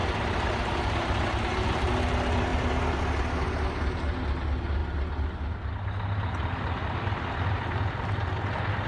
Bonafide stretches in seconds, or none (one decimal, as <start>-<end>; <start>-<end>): 1.9-2.5; 3.0-8.9